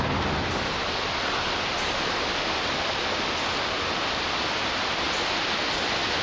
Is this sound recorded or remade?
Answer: recorded